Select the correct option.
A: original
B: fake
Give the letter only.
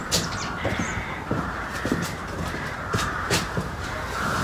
B